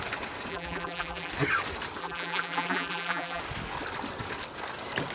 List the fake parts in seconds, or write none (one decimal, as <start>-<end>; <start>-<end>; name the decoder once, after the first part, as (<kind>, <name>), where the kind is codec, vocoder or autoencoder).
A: 0.5-1.3 (vocoder, BigVGAN v2); 2.0-3.4